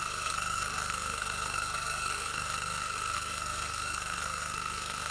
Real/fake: fake